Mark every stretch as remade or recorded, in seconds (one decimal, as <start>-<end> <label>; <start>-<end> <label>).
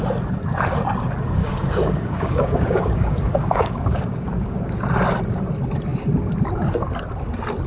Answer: 0.0-1.4 recorded; 1.4-4.8 remade; 4.8-7.7 recorded